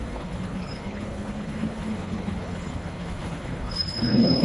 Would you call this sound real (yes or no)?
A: no